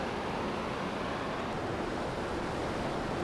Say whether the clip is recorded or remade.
recorded